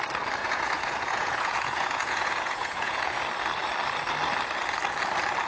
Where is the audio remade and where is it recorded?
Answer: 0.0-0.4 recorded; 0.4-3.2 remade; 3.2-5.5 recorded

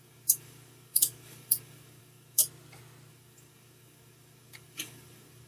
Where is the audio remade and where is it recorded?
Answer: 0.0-2.4 remade; 2.4-3.1 recorded; 3.1-5.5 remade

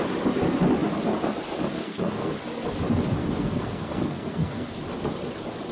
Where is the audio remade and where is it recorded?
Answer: 0.0-1.8 recorded; 1.8-2.3 remade; 2.3-3.2 recorded; 3.2-4.7 remade; 4.7-5.7 recorded

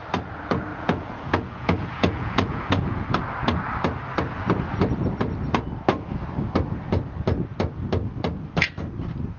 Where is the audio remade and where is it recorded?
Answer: 0.0-0.7 recorded; 0.7-3.2 remade; 3.2-9.4 recorded

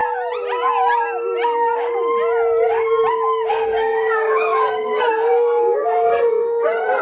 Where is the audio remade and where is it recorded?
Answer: 0.0-3.5 recorded; 3.5-7.0 remade

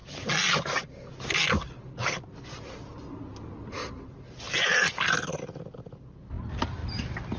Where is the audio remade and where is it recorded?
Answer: 0.0-7.4 recorded

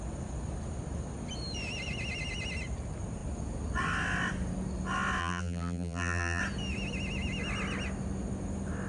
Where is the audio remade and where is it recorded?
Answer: 0.0-5.2 recorded; 5.2-6.4 remade; 6.4-8.9 recorded